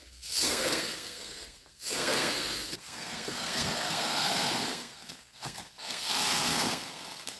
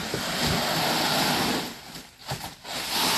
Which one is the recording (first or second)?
second